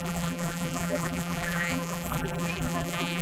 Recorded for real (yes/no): no